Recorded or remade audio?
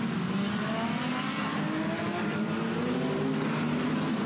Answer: recorded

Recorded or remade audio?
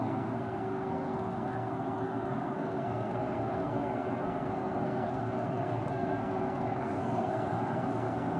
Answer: remade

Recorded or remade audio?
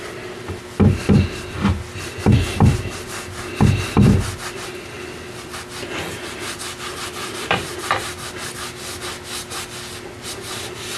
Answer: recorded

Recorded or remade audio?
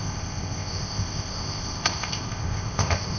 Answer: remade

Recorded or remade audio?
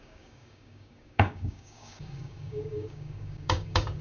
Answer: remade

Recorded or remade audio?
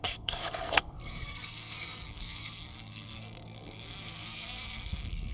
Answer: remade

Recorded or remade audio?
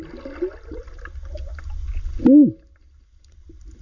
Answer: recorded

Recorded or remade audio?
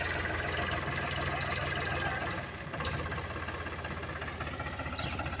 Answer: recorded